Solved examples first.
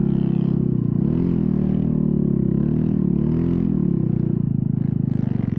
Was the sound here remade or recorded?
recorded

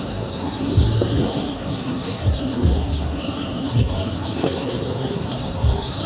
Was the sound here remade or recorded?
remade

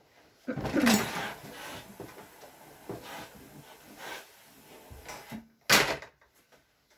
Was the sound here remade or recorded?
recorded